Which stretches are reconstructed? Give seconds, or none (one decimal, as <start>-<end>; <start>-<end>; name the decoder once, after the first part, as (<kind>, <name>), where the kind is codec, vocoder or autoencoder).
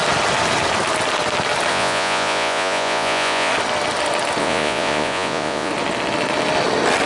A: 1.7-3.5 (vocoder, Vocos); 4.4-5.7